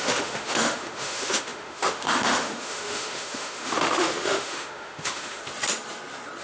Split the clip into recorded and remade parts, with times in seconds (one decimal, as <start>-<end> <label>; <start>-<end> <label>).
0.0-5.4 remade; 5.4-6.4 recorded

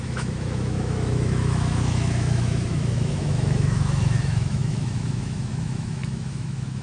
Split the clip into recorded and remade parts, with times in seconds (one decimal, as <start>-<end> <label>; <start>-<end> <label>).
0.0-6.8 remade

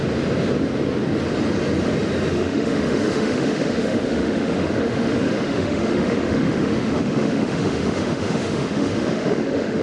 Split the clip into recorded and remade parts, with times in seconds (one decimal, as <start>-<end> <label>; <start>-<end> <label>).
0.0-2.3 recorded; 2.3-9.8 remade

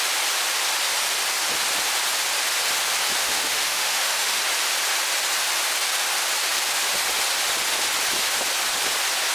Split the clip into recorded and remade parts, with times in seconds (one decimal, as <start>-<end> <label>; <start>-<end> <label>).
0.0-3.2 recorded; 3.2-4.4 remade; 4.4-9.3 recorded

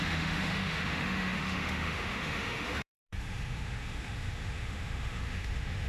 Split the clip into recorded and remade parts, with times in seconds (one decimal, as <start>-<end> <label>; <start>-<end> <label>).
0.0-5.9 remade